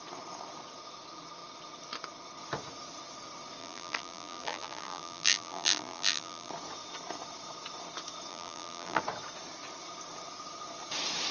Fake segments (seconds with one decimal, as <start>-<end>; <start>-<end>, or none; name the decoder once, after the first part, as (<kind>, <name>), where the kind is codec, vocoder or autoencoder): 3.6-6.5 (vocoder, BigVGAN v2); 8.3-9.0